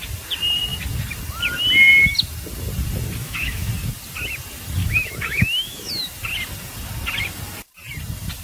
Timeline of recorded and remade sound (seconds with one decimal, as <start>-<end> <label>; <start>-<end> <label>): 0.0-3.2 recorded; 3.2-3.7 remade; 3.7-4.8 recorded; 4.8-5.9 remade; 5.9-8.4 recorded